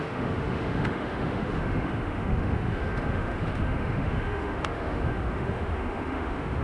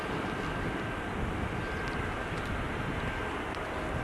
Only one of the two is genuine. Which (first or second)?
second